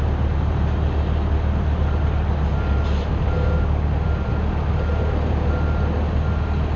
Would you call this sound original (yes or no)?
yes